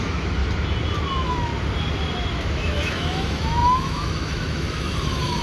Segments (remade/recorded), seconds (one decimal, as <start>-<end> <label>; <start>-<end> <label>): 0.0-0.4 remade; 0.4-1.1 recorded; 1.1-1.5 remade; 1.5-2.4 recorded; 2.4-5.4 remade